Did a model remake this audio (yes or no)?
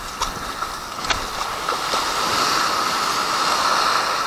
no